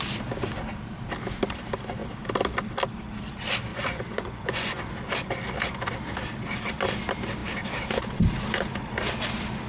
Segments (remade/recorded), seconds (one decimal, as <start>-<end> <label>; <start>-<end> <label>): 0.0-3.7 recorded; 3.7-4.8 remade; 4.8-9.7 recorded